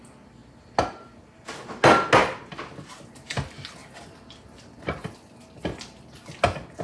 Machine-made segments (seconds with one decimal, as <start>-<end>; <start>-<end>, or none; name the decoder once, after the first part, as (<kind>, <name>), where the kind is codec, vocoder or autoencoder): none